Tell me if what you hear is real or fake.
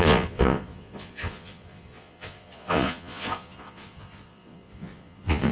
fake